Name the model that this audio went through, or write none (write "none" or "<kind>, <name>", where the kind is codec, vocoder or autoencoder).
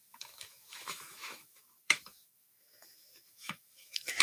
autoencoder, DAC-VAE